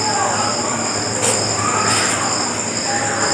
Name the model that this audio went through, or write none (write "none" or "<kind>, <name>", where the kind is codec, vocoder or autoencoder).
none